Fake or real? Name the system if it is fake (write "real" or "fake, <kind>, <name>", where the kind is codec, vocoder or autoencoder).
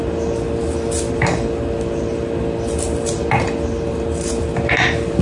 real